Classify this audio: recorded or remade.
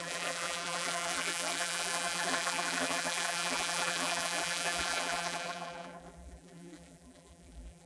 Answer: remade